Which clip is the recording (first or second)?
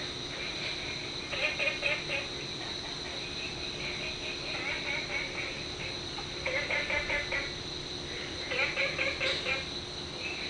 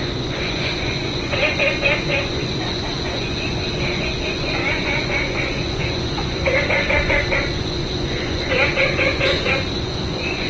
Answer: first